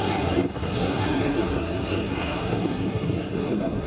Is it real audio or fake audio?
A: fake